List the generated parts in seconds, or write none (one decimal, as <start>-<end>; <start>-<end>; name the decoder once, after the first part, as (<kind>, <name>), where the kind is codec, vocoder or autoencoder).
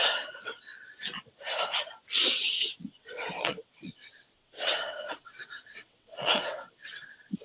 0.0-0.7 (vocoder, WaveNeXt); 2.2-7.4